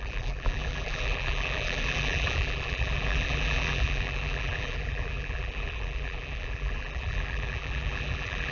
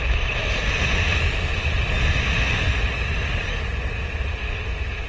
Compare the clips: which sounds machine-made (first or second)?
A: first